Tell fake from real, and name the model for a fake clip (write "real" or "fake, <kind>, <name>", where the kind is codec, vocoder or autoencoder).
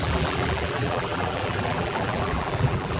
fake, vocoder, BigVGAN v2